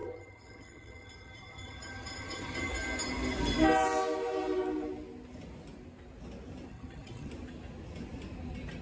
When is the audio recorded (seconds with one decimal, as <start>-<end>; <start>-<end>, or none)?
2.7-6.7; 7.3-8.8